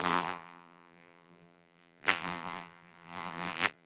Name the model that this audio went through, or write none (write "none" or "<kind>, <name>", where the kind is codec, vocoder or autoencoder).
vocoder, BigVGAN v2